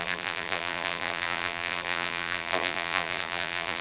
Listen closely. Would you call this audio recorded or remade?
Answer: remade